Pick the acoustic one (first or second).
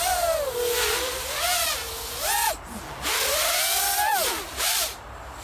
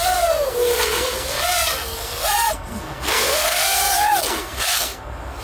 first